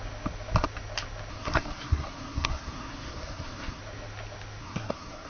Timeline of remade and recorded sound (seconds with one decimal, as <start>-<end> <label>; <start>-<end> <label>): 0.0-1.3 recorded; 1.3-3.8 remade; 3.8-4.6 recorded; 4.6-5.3 remade